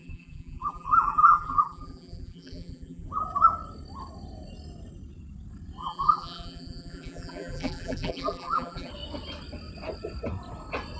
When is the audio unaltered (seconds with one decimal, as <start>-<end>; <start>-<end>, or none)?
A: 3.1-5.8; 8.9-11.0